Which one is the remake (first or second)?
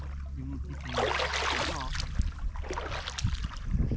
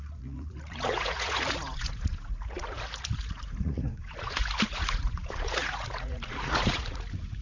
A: second